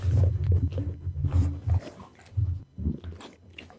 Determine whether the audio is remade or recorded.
recorded